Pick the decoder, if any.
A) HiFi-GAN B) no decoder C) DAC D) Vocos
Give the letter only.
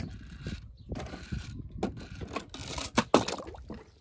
B